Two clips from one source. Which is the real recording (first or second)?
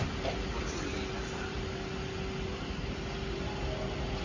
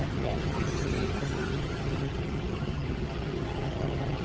first